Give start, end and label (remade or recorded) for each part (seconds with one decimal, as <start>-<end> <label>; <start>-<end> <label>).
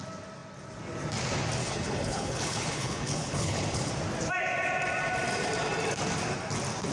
0.0-1.6 recorded; 1.6-3.9 remade; 3.9-6.9 recorded